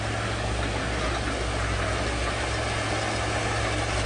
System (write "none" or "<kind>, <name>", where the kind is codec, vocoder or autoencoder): none